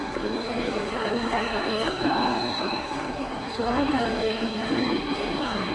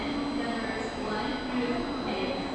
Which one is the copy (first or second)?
first